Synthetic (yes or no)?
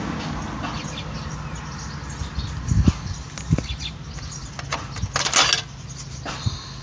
no